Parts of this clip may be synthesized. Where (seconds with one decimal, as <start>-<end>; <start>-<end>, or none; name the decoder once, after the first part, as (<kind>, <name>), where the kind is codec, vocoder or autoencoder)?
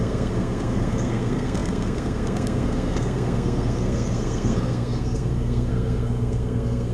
0.0-6.9 (codec, SNAC)